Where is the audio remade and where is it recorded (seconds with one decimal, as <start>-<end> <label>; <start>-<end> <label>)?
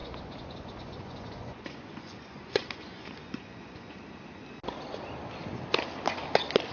0.0-4.0 remade; 4.0-6.7 recorded